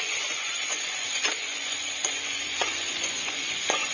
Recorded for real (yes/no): no